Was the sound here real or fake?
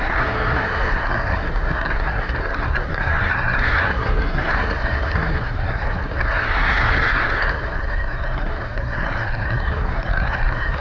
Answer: fake